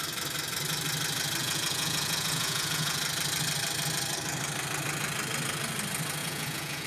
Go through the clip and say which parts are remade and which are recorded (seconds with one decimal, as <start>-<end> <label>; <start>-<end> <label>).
0.0-1.4 recorded; 1.4-3.0 remade; 3.0-6.2 recorded; 6.2-6.9 remade